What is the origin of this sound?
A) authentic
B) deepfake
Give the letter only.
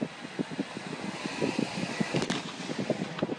A